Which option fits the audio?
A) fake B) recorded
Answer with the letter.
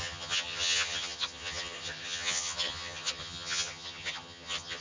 A